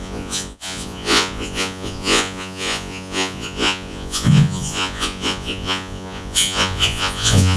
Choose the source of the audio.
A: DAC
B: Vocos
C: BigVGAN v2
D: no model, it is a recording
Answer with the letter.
B